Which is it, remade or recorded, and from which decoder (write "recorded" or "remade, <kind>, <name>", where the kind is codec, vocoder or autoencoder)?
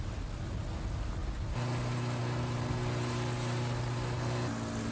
recorded